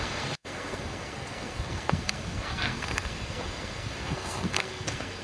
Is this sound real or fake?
fake